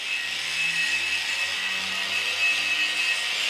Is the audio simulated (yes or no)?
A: no